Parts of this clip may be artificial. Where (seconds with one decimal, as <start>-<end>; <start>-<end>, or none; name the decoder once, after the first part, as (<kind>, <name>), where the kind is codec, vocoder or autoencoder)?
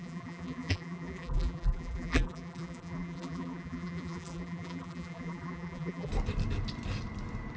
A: 0.0-6.1 (vocoder, BigVGAN v2)